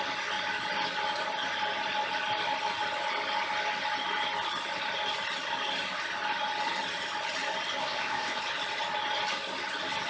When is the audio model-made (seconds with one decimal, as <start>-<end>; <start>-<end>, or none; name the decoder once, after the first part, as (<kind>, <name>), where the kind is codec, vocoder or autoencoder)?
7.8-8.4 (codec, ZipCodec)